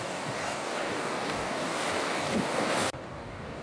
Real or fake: fake